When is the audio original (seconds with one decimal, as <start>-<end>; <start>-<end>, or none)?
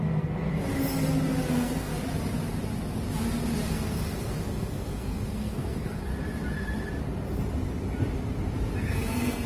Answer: 0.5-1.5; 1.9-3.7; 6.1-8.8